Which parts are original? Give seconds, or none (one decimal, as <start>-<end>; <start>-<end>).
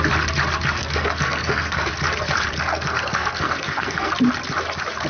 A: 0.0-0.8; 1.9-2.5; 4.1-5.1